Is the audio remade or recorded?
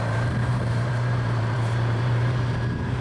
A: remade